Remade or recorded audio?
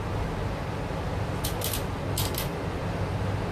recorded